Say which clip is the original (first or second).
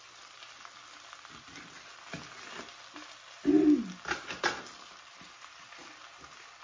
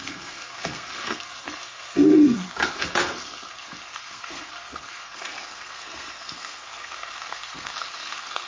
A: first